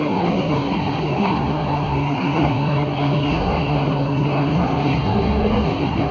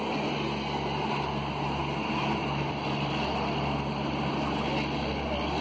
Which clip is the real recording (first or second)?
second